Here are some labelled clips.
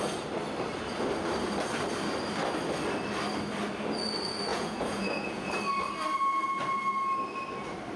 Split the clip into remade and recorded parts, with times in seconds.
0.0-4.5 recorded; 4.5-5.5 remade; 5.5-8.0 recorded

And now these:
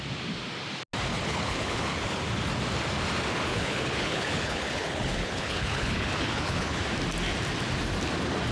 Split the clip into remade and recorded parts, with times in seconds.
0.0-1.1 recorded; 1.1-2.2 remade; 2.2-3.5 recorded; 3.5-6.8 remade; 6.8-8.5 recorded

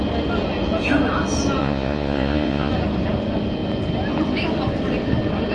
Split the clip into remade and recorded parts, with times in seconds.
0.0-1.6 recorded; 1.6-2.7 remade; 2.7-5.5 recorded